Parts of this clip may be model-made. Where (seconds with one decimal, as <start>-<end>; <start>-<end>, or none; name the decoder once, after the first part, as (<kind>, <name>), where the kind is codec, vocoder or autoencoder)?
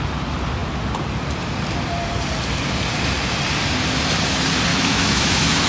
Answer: 4.7-5.7 (autoencoder, DAC-VAE)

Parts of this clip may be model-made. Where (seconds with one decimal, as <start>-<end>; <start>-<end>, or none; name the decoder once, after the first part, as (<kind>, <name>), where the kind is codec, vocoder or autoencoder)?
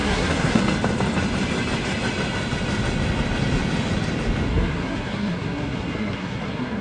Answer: 0.0-0.6 (codec, SNAC); 4.5-6.8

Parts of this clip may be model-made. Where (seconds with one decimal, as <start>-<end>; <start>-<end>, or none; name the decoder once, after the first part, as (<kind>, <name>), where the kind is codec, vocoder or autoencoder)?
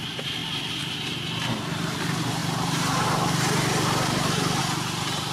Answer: 2.4-4.6 (vocoder, BigVGAN v2)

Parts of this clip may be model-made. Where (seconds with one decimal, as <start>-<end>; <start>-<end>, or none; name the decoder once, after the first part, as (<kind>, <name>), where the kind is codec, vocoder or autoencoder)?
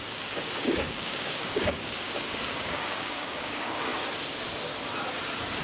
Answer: 0.0-3.9 (codec, DAC)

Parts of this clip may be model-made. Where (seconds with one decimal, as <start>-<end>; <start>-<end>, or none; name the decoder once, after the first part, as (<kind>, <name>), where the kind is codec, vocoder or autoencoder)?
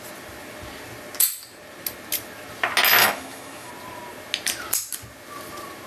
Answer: 3.0-3.7 (autoencoder, DAC-VAE)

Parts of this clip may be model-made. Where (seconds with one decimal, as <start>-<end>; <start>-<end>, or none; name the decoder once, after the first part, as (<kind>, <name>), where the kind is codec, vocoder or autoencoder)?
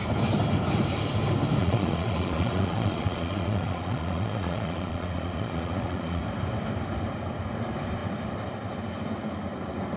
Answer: 1.6-6.2 (vocoder, Vocos)